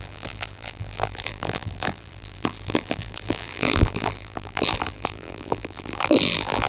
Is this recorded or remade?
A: remade